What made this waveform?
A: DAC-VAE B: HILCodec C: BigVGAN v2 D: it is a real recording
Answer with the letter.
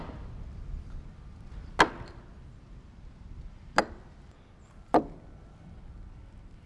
D